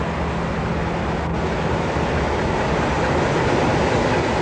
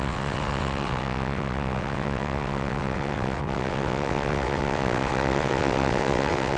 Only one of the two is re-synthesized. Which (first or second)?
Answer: second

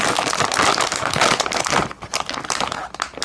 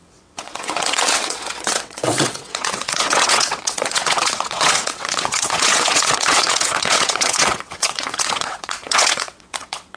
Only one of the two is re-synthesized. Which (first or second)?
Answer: second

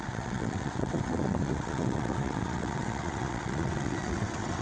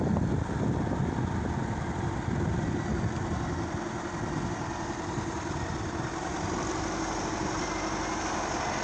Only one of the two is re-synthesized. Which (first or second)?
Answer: first